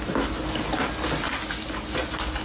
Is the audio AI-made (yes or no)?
no